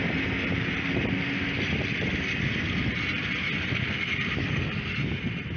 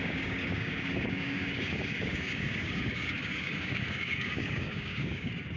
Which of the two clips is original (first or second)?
first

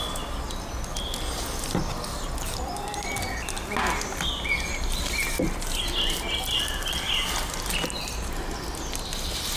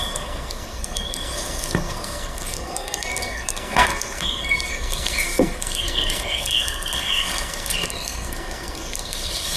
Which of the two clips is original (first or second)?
first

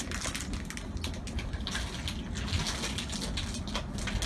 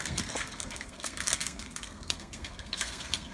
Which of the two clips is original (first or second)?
first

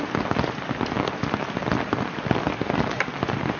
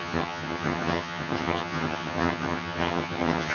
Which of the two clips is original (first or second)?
first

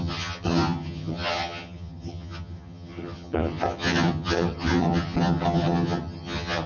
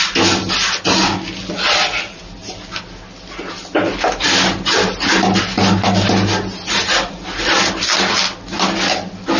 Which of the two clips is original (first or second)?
second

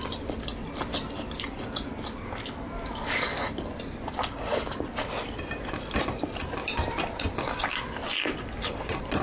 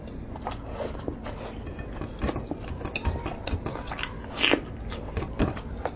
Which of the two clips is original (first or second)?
second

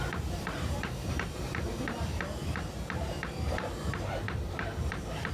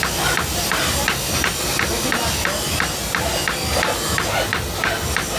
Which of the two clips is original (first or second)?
second